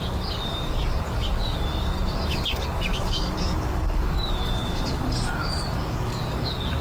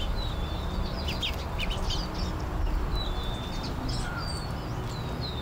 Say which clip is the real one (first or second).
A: second